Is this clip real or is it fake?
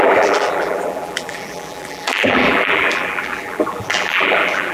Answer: fake